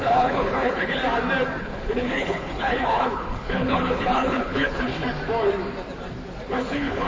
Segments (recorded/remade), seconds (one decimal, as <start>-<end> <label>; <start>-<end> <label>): 0.0-1.0 remade; 1.0-1.6 recorded; 1.6-4.9 remade; 4.9-6.5 recorded; 6.5-7.1 remade